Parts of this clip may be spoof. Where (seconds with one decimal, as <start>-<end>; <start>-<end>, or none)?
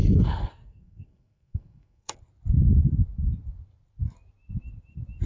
0.0-2.2